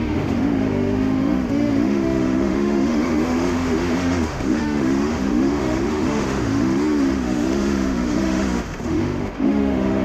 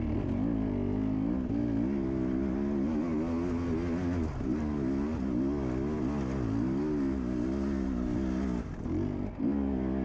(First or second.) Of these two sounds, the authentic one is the second